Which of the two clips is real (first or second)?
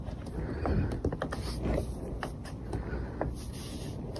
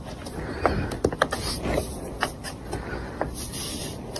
first